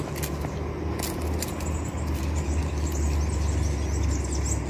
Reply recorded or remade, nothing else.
recorded